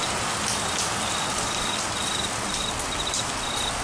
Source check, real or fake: real